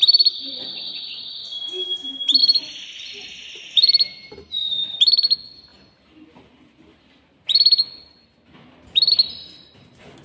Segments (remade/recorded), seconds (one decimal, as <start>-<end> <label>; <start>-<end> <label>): 0.0-1.4 recorded; 1.4-2.4 remade; 2.4-3.2 recorded; 3.2-5.2 remade; 5.2-10.2 recorded